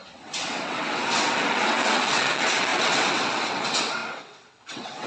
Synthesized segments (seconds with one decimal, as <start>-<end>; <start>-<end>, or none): 0.0-5.1

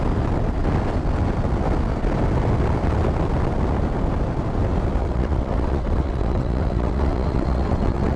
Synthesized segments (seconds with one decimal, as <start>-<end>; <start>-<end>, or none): 5.0-8.2

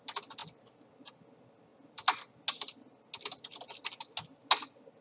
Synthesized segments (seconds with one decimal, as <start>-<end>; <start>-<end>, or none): none

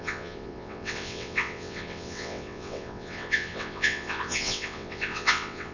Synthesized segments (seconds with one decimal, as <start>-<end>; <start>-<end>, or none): 0.0-5.7